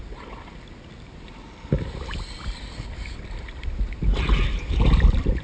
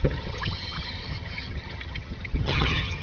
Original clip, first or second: first